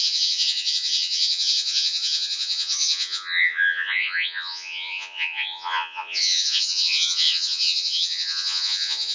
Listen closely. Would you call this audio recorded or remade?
remade